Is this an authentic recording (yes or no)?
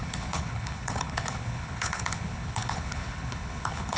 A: no